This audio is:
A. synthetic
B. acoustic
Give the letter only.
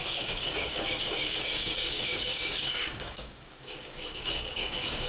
A